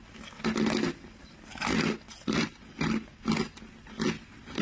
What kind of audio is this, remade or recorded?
recorded